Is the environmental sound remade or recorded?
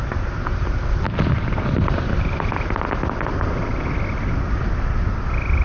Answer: recorded